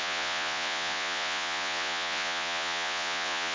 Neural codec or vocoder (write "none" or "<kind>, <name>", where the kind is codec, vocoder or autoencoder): vocoder, Vocos